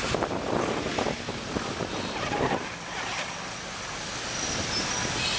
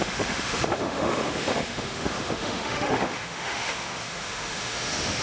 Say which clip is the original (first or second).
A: first